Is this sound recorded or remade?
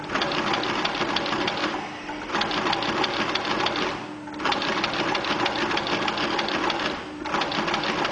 recorded